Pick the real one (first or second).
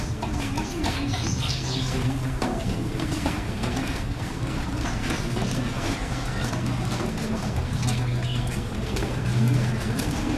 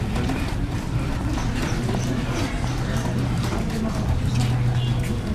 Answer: second